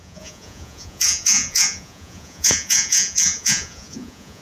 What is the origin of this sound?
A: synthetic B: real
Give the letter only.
A